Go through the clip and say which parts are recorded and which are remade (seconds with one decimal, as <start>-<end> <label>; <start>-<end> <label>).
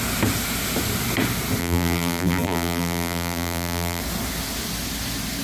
0.0-1.6 recorded; 1.6-4.0 remade; 4.0-5.4 recorded